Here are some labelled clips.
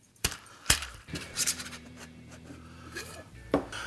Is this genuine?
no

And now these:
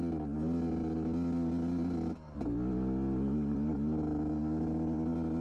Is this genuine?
yes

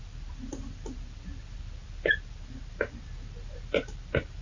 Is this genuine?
yes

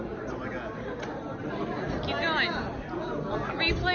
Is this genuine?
yes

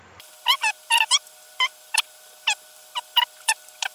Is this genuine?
no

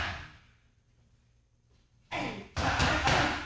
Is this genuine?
yes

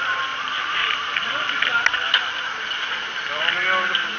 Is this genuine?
yes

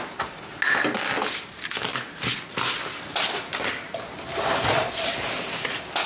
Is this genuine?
yes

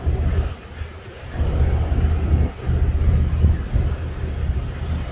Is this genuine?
yes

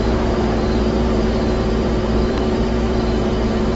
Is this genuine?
no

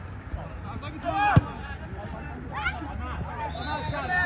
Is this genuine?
yes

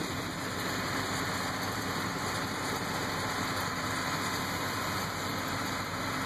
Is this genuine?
yes